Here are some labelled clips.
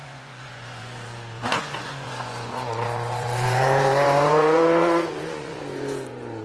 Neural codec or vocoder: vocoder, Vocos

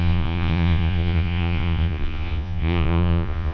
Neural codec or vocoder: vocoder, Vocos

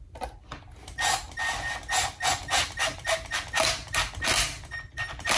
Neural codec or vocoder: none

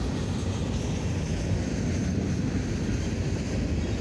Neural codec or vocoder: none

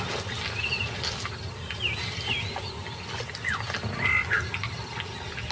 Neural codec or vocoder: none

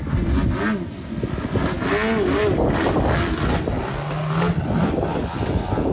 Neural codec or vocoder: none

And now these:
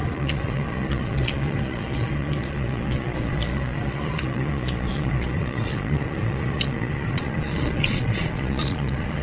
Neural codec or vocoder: vocoder, Vocos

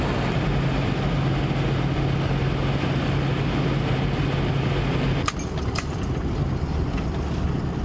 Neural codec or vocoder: none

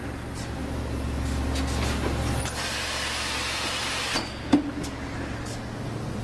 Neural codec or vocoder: none